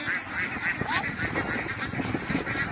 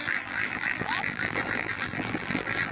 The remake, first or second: second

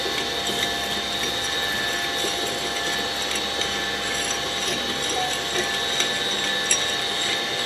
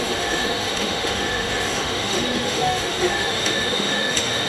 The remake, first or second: second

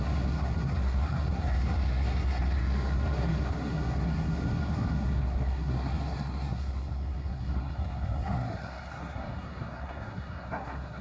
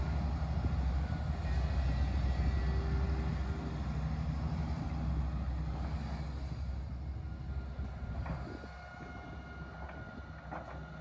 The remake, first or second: first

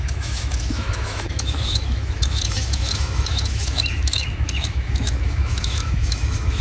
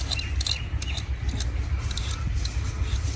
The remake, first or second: first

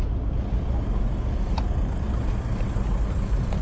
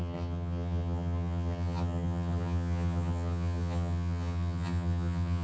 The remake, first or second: second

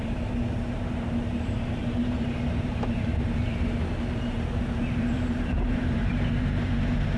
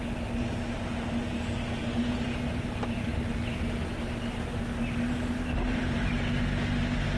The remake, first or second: first